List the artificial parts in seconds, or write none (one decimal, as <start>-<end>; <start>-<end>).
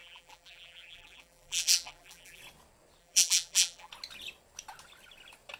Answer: 0.0-2.4; 3.0-3.9